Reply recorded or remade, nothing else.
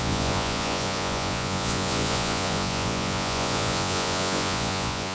remade